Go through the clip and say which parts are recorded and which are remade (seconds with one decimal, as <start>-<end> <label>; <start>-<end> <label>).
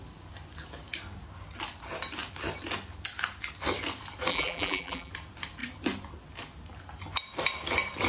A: 0.0-4.3 recorded; 4.3-5.1 remade; 5.1-8.1 recorded